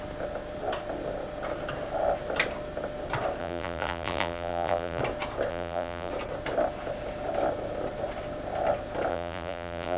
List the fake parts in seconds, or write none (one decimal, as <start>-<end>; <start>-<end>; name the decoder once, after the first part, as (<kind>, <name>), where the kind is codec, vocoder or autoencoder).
3.4-5.0 (vocoder, BigVGAN v2); 5.5-6.1; 9.1-10.0